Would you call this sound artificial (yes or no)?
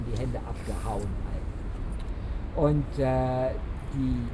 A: no